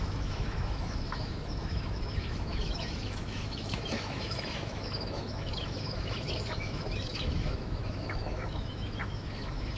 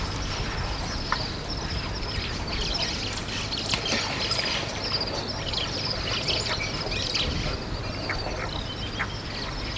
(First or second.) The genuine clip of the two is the second